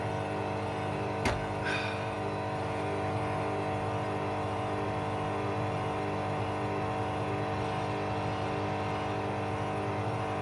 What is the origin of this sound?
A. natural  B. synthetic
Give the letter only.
A